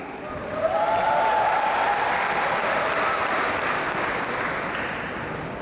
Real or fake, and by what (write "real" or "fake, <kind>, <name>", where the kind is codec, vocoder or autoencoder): real